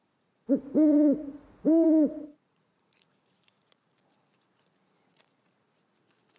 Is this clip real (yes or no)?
no